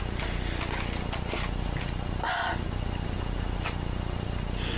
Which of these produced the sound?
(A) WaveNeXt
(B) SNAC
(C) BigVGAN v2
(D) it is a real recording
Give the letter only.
D